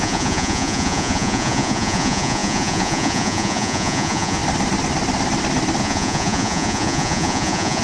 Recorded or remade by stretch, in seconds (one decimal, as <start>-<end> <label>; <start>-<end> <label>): 0.0-4.4 remade; 4.4-5.8 recorded; 5.8-7.8 remade